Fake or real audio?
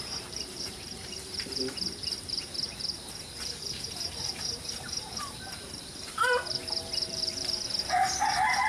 fake